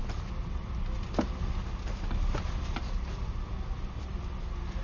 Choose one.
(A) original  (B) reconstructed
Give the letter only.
A